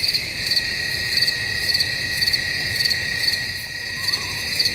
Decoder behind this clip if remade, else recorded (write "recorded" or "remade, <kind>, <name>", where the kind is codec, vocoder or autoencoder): remade, autoencoder, DAC-VAE